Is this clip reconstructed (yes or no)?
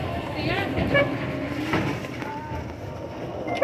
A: no